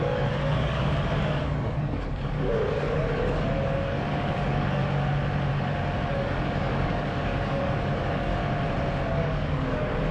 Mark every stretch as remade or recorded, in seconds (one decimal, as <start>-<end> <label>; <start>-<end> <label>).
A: 0.0-4.8 remade; 4.8-6.1 recorded; 6.1-8.4 remade; 8.4-9.1 recorded; 9.1-10.1 remade